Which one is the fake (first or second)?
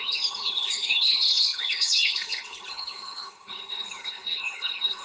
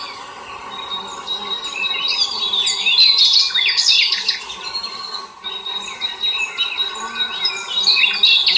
first